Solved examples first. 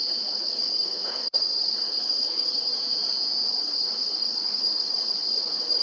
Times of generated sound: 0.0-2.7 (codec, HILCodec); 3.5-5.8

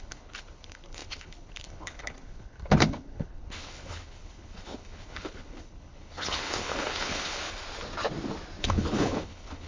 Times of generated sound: 0.0-7.6 (codec, HILCodec); 8.6-9.7